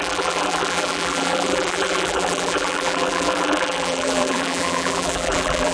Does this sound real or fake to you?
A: fake